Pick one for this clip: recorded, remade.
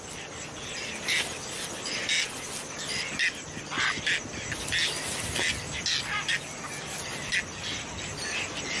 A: recorded